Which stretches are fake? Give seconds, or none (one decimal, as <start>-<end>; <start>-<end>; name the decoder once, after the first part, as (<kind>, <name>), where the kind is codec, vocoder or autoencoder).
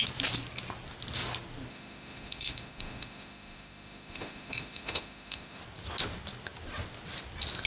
1.7-5.6 (autoencoder, DAC-VAE)